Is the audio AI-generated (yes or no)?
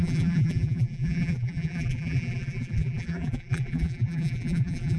yes